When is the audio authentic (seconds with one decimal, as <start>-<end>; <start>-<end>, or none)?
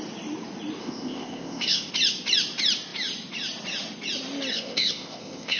0.0-0.8; 1.9-4.5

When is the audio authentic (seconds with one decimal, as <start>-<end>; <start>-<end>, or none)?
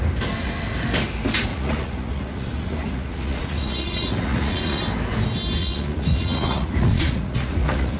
0.0-1.5; 4.8-5.6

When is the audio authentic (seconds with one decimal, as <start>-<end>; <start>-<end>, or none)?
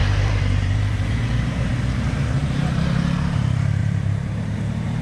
1.7-2.4